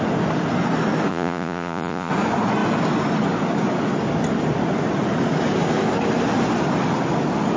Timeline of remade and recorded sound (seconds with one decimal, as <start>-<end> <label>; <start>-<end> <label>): 0.0-1.1 recorded; 1.1-2.1 remade; 2.1-7.6 recorded